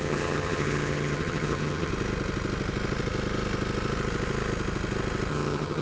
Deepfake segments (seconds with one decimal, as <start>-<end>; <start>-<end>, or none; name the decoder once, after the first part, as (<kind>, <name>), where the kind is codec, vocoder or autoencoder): 0.0-1.9 (vocoder, HiFi-GAN); 5.3-5.8